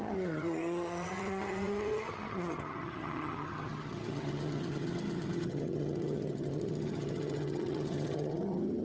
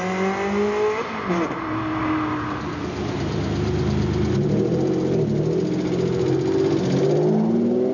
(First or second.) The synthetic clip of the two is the first